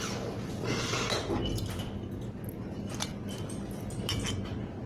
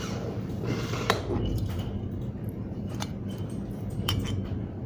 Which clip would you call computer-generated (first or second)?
second